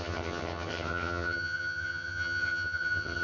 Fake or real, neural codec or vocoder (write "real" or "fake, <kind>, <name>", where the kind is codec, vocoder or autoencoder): fake, vocoder, HiFi-GAN